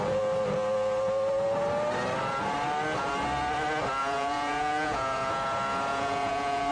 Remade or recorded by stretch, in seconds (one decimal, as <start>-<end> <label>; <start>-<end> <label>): 0.0-4.0 recorded; 4.0-5.3 remade; 5.3-5.9 recorded; 5.9-6.7 remade

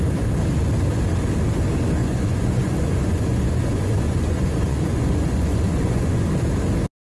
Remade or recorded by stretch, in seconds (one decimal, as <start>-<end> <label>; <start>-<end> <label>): 0.0-2.0 recorded; 2.0-6.3 remade; 6.3-7.1 recorded